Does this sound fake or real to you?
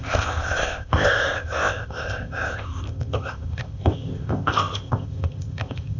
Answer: fake